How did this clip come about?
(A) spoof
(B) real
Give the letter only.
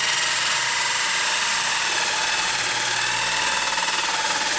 B